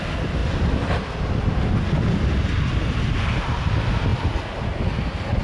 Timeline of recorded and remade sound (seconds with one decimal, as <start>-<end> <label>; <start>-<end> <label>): 0.0-0.4 recorded; 0.4-1.4 remade; 1.4-5.4 recorded